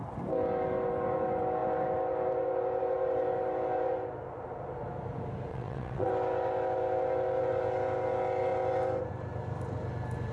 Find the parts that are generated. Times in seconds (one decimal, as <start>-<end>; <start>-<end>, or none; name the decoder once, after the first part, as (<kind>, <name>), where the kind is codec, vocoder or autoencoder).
5.5-6.1 (vocoder, WaveNeXt)

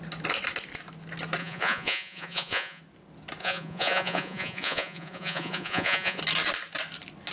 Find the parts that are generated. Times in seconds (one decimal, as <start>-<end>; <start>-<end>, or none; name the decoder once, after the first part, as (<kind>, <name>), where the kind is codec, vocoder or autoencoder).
1.4-2.8 (vocoder, Vocos); 3.4-6.2

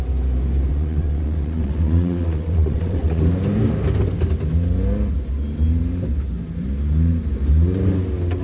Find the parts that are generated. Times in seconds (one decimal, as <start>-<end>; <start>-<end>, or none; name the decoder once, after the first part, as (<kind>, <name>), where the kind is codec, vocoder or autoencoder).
0.7-3.2 (vocoder, WaveNeXt)

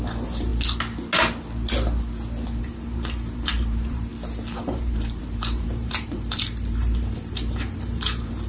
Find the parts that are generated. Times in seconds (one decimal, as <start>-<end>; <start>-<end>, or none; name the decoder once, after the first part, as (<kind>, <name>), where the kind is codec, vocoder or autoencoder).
0.0-0.5 (vocoder, BigVGAN v2); 2.6-4.1; 4.6-8.5

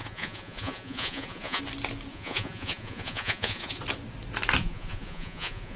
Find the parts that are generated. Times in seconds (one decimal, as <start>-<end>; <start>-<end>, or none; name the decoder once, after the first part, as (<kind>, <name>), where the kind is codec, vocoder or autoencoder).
0.0-1.6 (vocoder, Vocos); 2.1-3.8; 4.6-5.8

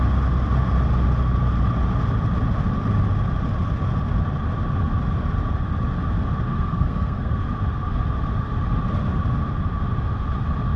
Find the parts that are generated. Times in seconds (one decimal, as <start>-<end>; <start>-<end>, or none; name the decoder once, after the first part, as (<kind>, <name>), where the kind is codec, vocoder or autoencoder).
6.5-7.4 (codec, SNAC)